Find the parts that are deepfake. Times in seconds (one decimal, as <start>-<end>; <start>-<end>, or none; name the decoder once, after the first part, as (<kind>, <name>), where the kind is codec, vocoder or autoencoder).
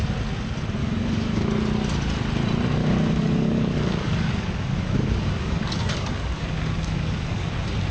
0.8-1.5 (codec, DAC); 2.8-7.5